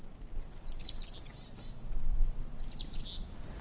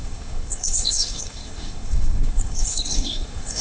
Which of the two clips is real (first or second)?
first